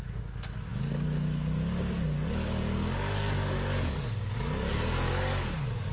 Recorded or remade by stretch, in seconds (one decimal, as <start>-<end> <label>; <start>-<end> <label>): 0.0-5.9 remade